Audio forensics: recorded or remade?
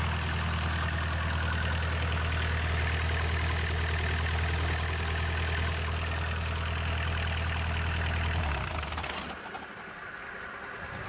recorded